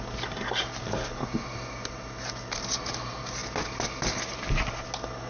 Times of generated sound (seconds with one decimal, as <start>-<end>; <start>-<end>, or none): none